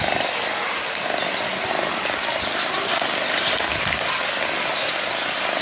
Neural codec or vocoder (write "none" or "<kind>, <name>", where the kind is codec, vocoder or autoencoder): none